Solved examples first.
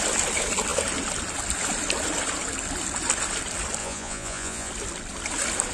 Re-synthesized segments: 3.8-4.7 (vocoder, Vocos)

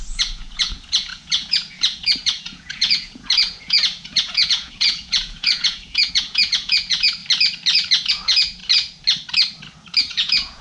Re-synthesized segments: 0.0-7.2 (vocoder, Vocos); 8.1-8.6; 10.0-10.6

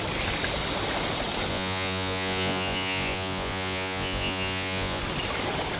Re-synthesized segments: 1.5-5.0 (vocoder, Vocos)